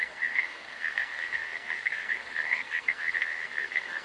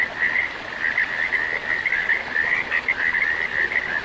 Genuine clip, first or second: second